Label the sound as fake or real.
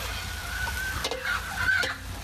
real